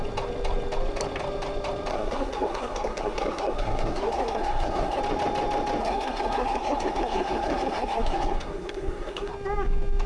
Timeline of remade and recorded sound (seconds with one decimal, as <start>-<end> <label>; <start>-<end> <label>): 0.0-1.9 recorded; 1.9-5.0 remade; 5.0-5.8 recorded; 5.8-9.3 remade; 9.3-10.1 recorded

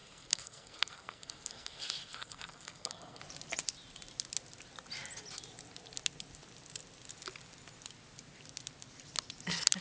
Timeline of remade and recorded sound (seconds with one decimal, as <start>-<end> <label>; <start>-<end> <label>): 0.0-3.2 remade; 3.2-9.8 recorded

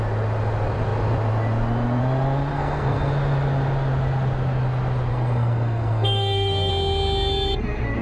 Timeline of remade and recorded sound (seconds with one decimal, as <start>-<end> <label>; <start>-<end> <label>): 0.0-2.5 recorded; 2.5-3.1 remade; 3.1-5.1 recorded; 5.1-6.7 remade; 6.7-8.0 recorded

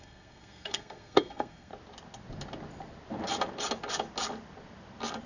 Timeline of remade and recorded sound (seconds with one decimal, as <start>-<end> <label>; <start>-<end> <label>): 0.0-1.7 remade; 1.7-5.3 recorded

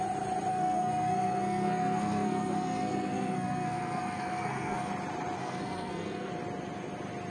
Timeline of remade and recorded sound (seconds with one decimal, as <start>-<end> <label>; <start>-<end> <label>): 0.0-0.5 recorded; 0.5-4.9 remade; 4.9-5.4 recorded; 5.4-6.3 remade; 6.3-7.3 recorded